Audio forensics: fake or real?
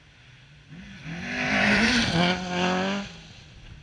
real